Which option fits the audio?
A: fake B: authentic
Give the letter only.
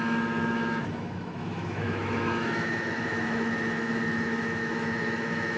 A